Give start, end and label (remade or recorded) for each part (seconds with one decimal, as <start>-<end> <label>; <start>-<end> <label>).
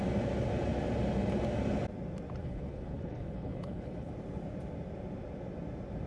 0.0-2.4 recorded; 2.4-4.1 remade; 4.1-6.1 recorded